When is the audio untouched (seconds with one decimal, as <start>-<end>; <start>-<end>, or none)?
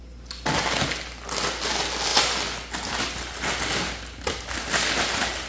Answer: 0.0-5.5